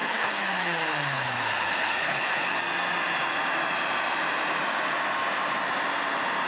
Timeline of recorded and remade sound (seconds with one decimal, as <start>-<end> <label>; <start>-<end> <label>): 0.0-2.6 remade; 2.6-6.5 recorded